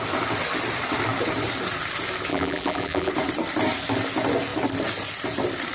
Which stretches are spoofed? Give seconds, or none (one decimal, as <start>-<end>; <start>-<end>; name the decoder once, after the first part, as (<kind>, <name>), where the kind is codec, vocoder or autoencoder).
2.3-3.1 (vocoder, BigVGAN v2)